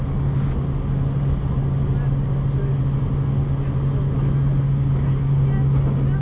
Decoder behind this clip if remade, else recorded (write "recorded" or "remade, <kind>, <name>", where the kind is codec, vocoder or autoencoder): recorded